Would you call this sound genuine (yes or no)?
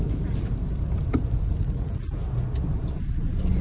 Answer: yes